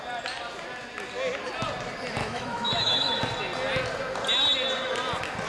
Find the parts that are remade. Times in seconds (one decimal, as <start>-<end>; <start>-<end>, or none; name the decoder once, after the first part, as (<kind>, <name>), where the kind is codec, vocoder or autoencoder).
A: 2.2-3.2 (autoencoder, DAC-VAE)